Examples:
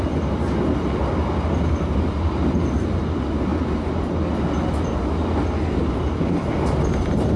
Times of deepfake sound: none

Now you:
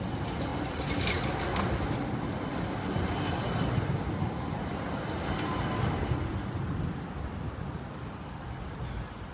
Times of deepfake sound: 0.0-0.5 (vocoder, BigVGAN v2); 1.6-9.3

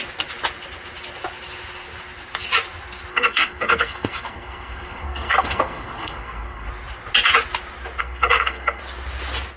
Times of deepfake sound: 3.1-6.7 (codec, SNAC); 8.0-8.8

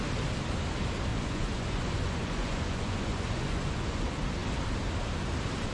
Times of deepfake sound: 1.1-4.0 (vocoder, Vocos)

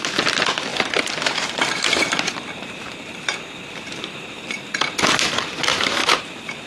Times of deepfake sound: 0.7-4.7 (vocoder, BigVGAN v2); 6.0-6.7

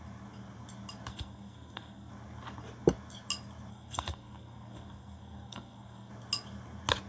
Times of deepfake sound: 1.1-2.1 (codec, SNAC); 3.7-6.1